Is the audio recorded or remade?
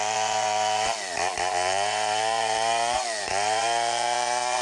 remade